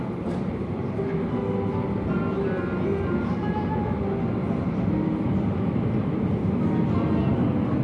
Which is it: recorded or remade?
recorded